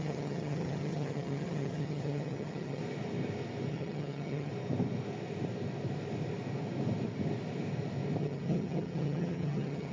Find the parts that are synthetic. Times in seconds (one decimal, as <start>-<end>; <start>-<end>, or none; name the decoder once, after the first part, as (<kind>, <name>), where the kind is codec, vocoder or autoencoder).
0.0-2.8 (vocoder, HiFi-GAN); 3.7-4.5; 8.2-9.9